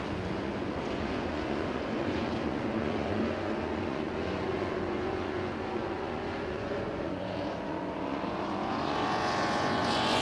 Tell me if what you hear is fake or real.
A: fake